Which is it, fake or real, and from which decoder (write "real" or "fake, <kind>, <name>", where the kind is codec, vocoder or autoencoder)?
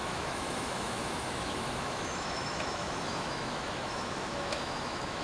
fake, autoencoder, DAC-VAE